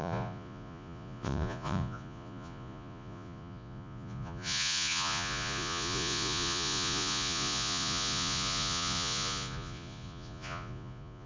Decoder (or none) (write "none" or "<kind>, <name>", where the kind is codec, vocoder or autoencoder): vocoder, Vocos